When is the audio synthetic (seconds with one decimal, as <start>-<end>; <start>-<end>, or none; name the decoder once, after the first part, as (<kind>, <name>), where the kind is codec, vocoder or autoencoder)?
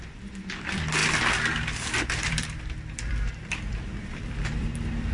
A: 0.0-1.0 (vocoder, BigVGAN v2); 1.9-5.1